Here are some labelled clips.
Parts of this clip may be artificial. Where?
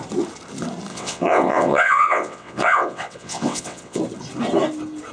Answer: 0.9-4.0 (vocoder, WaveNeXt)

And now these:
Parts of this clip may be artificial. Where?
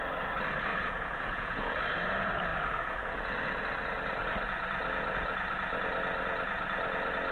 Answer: 0.7-1.8 (vocoder, Vocos)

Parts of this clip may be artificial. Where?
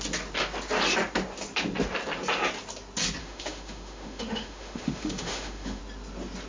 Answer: 3.2-5.8 (autoencoder, DAC-VAE)